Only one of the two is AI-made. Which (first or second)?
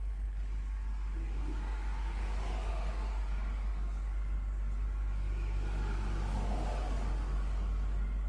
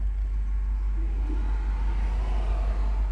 first